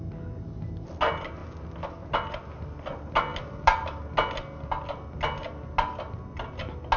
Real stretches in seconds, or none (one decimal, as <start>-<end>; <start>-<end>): 0.0-7.0